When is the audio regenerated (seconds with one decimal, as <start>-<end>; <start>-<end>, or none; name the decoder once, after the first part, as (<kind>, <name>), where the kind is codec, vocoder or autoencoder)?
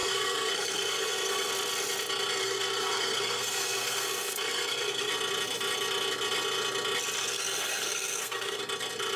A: 0.0-1.5 (codec, SNAC); 2.4-5.1; 7.2-8.6